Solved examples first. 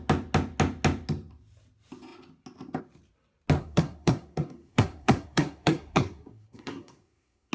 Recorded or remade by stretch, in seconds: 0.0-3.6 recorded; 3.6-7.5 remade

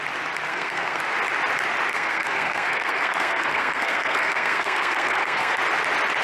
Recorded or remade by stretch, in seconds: 0.0-0.5 recorded; 0.5-1.0 remade; 1.0-1.9 recorded; 1.9-5.6 remade; 5.6-6.2 recorded

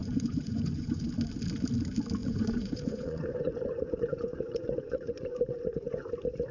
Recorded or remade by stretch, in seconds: 0.0-1.0 remade; 1.0-2.2 recorded; 2.2-6.1 remade; 6.1-6.5 recorded

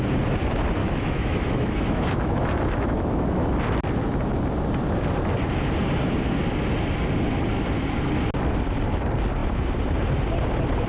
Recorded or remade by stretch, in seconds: 0.0-0.8 recorded; 0.8-3.6 remade; 3.6-10.9 recorded

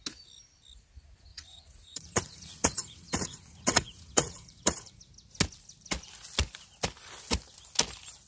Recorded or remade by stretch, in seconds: 0.0-1.3 recorded; 1.3-5.0 remade; 5.0-8.3 recorded

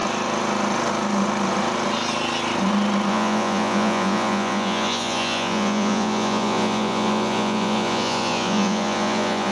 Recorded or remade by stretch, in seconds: 0.0-3.1 recorded; 3.1-9.5 remade